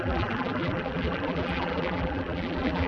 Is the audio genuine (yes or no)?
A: no